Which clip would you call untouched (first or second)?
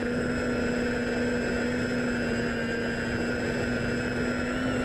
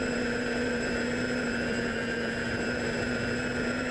first